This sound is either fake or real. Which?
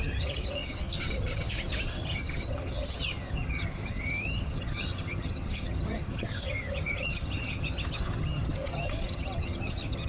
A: fake